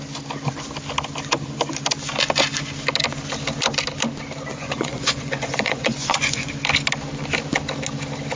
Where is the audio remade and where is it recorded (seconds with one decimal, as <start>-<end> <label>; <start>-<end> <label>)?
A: 0.0-4.5 recorded; 4.5-6.5 remade; 6.5-8.4 recorded